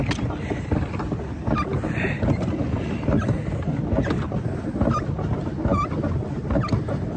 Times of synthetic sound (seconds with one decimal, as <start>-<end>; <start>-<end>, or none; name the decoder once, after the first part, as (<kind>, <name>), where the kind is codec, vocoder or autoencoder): none